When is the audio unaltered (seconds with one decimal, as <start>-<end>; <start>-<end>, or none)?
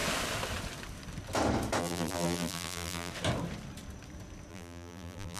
0.0-1.8; 3.1-4.5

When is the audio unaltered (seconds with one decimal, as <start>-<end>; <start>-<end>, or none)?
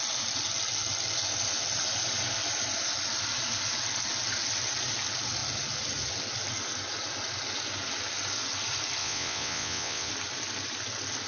0.0-9.0; 10.1-11.3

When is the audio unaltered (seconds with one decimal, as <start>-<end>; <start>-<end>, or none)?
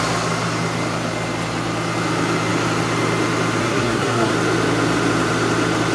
0.0-3.6; 4.3-5.9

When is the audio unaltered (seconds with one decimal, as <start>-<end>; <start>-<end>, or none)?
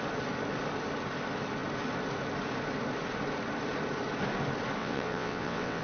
0.0-4.8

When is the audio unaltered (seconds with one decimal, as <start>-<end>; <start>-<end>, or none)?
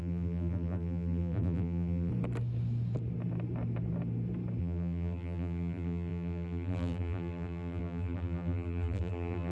2.1-4.6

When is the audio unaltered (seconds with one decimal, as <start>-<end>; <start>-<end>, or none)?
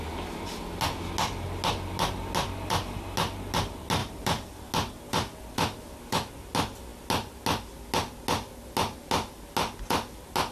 0.0-4.0; 4.7-10.5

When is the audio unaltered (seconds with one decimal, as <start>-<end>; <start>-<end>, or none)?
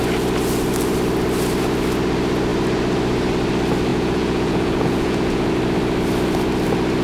0.0-3.9; 5.5-7.0